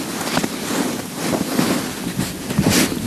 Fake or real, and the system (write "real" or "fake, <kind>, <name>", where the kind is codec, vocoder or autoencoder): real